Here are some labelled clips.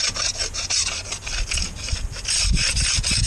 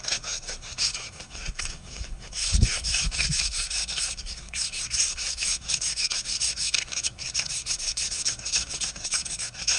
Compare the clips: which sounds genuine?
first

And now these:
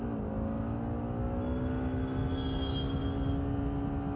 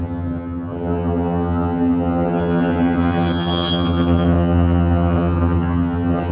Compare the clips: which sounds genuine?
first